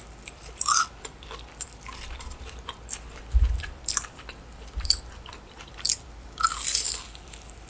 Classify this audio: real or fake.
fake